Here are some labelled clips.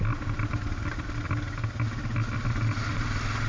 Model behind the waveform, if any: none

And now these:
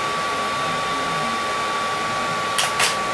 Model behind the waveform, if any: none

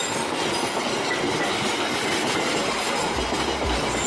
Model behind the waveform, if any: none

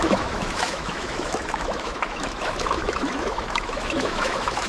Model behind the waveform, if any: autoencoder, DAC-VAE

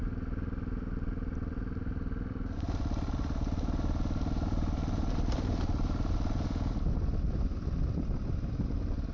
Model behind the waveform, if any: none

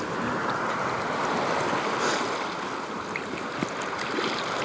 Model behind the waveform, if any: none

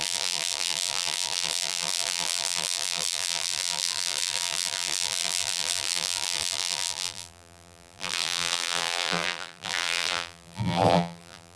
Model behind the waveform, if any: vocoder, BigVGAN v2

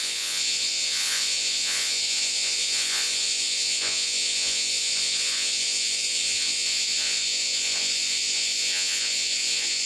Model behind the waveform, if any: vocoder, Vocos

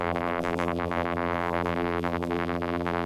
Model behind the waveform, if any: vocoder, BigVGAN v2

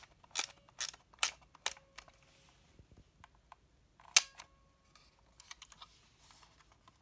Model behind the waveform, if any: none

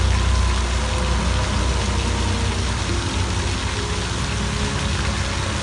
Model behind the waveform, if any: none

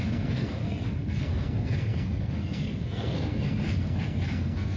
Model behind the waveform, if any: codec, SNAC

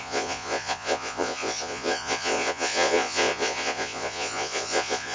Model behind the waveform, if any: vocoder, Vocos